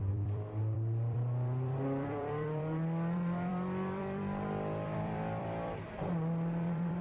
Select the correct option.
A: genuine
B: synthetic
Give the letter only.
B